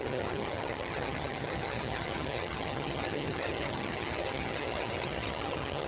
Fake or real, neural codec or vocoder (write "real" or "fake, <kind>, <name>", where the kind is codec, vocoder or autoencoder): fake, vocoder, HiFi-GAN